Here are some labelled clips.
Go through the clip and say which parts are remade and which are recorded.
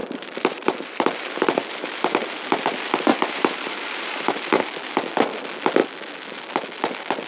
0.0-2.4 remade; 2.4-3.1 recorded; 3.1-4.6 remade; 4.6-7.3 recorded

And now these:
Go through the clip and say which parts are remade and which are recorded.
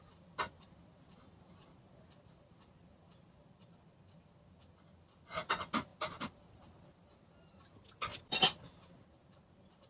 0.0-8.1 recorded; 8.1-9.9 remade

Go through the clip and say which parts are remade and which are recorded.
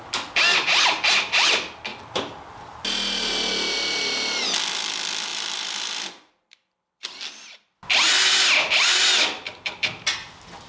0.0-5.3 recorded; 5.3-7.8 remade; 7.8-10.7 recorded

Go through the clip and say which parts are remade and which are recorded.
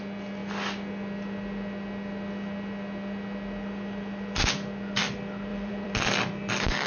0.0-5.5 recorded; 5.5-6.0 remade; 6.0-6.9 recorded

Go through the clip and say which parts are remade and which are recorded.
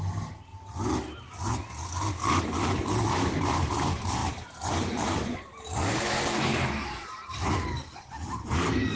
0.0-0.5 remade; 0.5-2.4 recorded; 2.4-9.0 remade